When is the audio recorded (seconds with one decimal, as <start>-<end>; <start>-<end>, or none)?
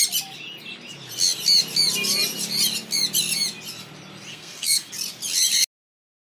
0.0-4.3; 4.9-6.4